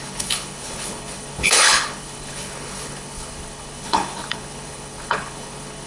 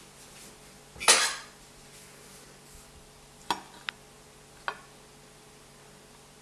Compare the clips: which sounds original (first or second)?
second